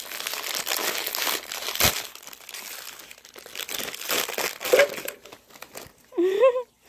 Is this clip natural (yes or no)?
yes